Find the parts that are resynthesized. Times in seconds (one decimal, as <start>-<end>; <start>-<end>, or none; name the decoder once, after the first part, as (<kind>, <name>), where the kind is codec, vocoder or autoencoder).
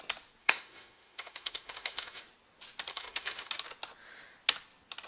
0.4-2.2 (autoencoder, DAC-VAE); 2.9-3.5